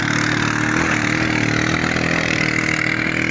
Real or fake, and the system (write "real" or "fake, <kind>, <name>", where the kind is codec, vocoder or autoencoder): real